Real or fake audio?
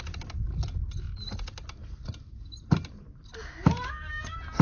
real